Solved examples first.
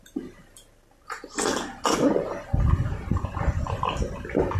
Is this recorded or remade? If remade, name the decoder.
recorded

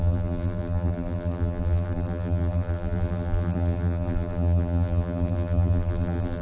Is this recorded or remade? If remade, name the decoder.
remade, vocoder, BigVGAN v2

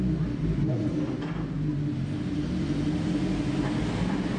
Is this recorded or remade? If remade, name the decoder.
recorded